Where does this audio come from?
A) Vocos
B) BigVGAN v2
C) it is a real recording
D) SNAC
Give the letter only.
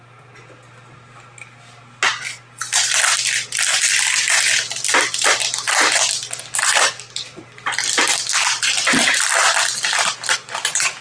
C